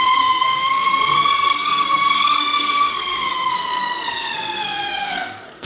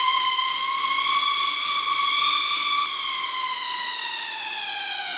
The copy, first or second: first